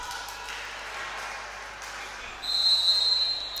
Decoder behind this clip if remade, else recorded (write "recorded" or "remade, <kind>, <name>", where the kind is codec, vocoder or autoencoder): recorded